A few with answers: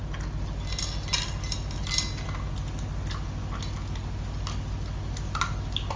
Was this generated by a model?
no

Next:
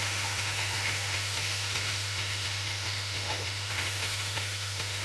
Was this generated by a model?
yes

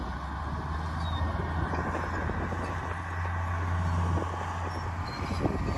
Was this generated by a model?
no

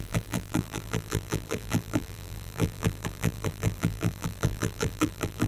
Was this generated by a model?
yes